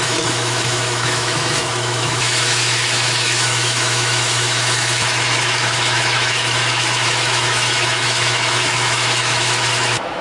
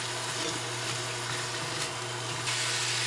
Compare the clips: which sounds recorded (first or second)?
second